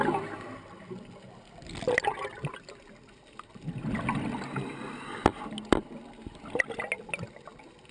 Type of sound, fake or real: real